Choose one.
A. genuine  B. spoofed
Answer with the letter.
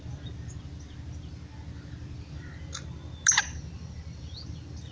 A